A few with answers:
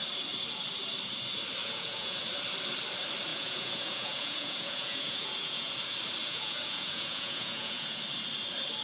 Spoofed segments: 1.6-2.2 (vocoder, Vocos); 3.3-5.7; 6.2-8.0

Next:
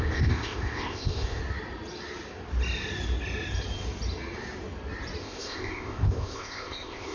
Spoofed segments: 0.0-1.4 (codec, ZipCodec); 5.2-7.1

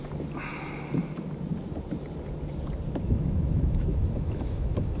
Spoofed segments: 3.0-5.0 (autoencoder, DAC-VAE)

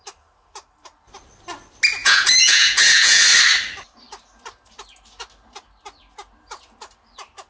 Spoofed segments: 2.0-3.2 (vocoder, Vocos)

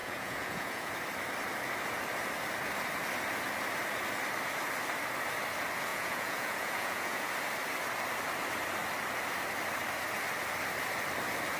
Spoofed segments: 0.0-0.9 (vocoder, Vocos); 5.9-7.3

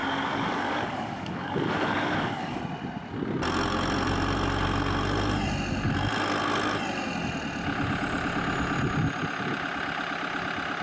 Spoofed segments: 0.0-2.6 (codec, DAC)

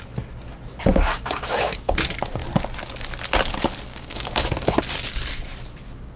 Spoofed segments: 0.9-1.9 (codec, DAC); 3.9-4.8